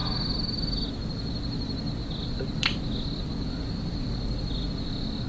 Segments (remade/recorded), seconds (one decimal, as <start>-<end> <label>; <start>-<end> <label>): 0.0-5.3 recorded